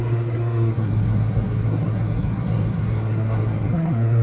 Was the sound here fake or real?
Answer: fake